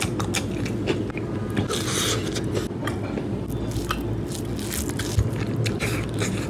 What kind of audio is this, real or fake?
real